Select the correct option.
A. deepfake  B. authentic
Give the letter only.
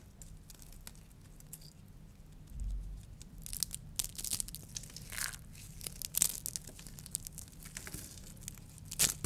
B